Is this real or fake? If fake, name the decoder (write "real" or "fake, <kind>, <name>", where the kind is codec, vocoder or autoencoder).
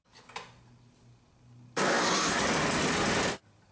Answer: real